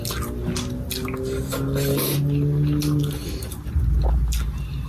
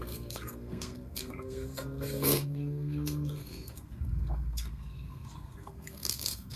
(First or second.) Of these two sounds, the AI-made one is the second